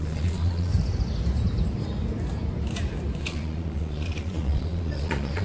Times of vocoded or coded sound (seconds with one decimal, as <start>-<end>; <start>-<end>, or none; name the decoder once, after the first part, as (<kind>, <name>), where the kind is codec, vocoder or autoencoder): 0.0-0.7 (vocoder, Vocos); 3.2-5.4